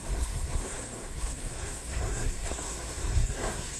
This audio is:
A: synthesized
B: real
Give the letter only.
A